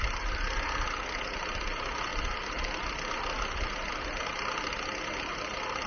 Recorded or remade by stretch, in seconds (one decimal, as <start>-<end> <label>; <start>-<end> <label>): 0.0-5.9 recorded